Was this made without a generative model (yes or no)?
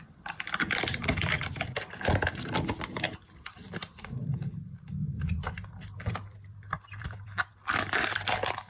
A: no